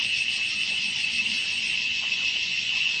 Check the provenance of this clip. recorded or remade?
remade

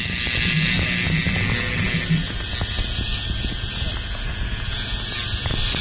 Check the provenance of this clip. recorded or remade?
recorded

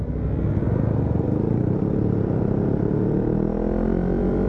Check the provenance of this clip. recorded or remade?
recorded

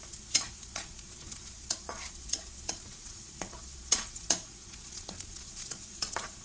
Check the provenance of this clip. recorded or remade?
remade